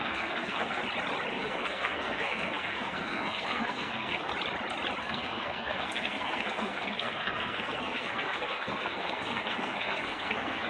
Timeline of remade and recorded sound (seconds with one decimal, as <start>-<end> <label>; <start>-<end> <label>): 0.0-0.8 remade; 0.8-1.3 recorded; 1.3-4.3 remade; 4.3-5.0 recorded; 5.0-10.7 remade